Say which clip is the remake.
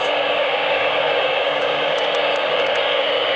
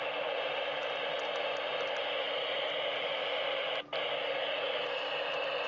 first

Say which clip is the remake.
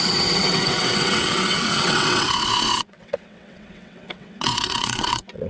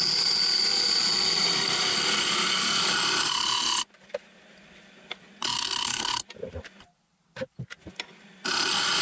first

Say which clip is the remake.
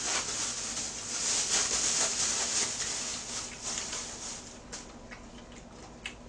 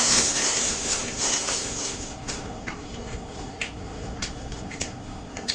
second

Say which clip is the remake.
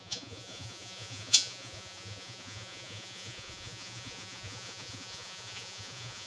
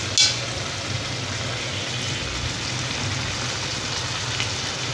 first